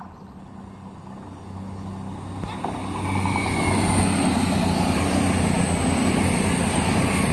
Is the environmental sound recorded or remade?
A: recorded